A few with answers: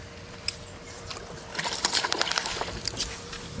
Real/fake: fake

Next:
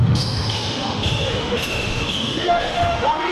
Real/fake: fake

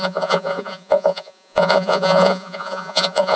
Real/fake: fake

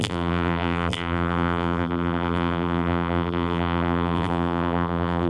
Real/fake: fake